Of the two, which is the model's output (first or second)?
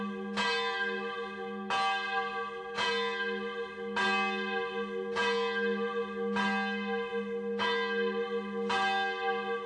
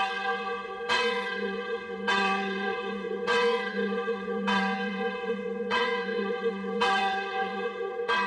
second